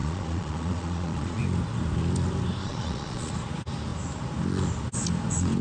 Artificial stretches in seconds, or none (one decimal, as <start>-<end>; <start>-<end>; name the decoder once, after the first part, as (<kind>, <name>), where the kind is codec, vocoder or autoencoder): 0.0-1.4 (vocoder, Vocos); 2.6-3.3